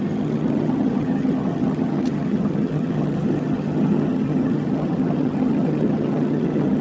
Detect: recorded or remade remade